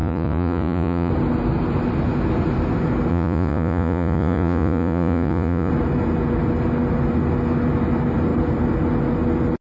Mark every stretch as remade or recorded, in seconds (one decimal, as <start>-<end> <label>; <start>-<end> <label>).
0.0-1.1 remade; 1.1-3.1 recorded; 3.1-5.7 remade; 5.7-9.6 recorded